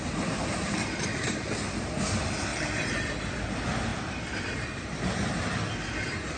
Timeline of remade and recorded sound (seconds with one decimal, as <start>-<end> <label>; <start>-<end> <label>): 0.0-0.8 recorded; 0.8-1.8 remade; 1.8-2.5 recorded; 2.5-3.1 remade; 3.1-3.9 recorded; 3.9-5.0 remade; 5.0-6.4 recorded